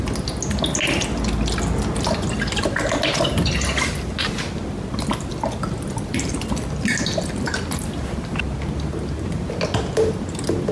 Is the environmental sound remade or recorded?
recorded